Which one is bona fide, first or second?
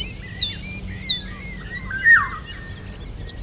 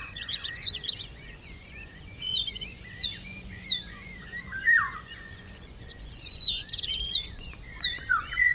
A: first